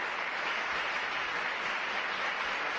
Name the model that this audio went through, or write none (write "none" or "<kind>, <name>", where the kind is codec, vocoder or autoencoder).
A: none